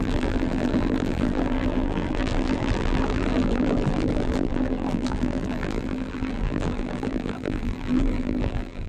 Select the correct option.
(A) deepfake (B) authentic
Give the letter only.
A